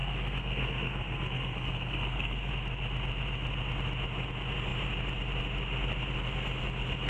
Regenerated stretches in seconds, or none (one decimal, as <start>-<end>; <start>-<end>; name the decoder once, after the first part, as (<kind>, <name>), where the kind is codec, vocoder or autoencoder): 0.0-2.5 (codec, SNAC)